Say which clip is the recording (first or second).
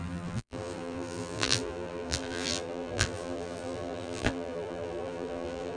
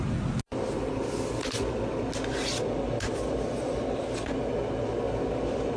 second